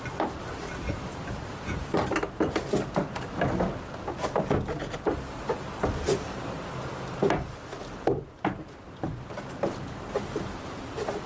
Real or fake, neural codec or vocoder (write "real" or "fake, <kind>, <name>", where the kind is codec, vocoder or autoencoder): real